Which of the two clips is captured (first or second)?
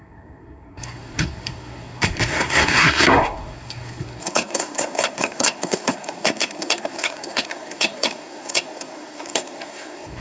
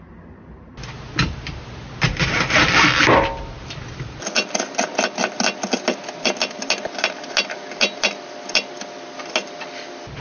second